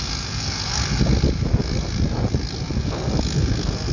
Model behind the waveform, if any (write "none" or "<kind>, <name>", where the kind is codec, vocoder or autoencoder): none